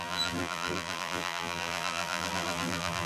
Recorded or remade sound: remade